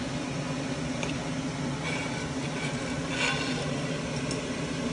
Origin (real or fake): real